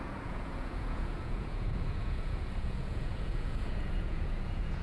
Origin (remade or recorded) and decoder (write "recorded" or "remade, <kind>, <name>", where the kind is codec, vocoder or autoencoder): remade, vocoder, Vocos